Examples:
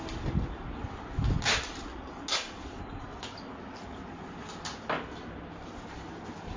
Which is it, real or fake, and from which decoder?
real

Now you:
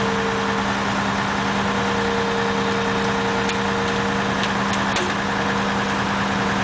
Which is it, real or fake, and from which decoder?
real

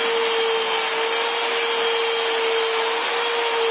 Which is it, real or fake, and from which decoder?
real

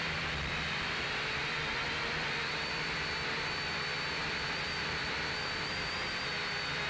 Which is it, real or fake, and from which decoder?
fake, vocoder, BigVGAN v2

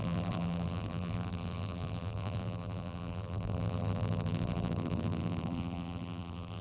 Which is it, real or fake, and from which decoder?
fake, vocoder, BigVGAN v2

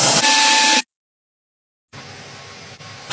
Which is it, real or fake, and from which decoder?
real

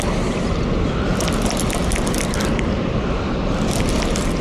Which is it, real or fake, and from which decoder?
real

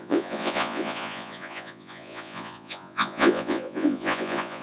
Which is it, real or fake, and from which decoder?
fake, vocoder, Vocos